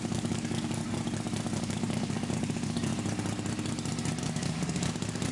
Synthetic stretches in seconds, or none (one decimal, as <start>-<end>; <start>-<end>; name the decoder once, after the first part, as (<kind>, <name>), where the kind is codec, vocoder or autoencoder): 0.0-0.8 (codec, DAC); 1.6-2.9; 4.2-5.3